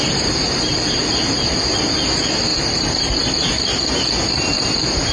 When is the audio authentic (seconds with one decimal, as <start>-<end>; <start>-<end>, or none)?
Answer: 0.0-2.5; 3.3-5.1